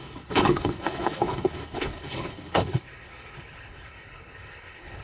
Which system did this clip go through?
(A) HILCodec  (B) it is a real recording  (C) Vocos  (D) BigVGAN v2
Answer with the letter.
A